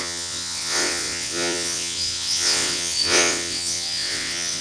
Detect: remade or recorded remade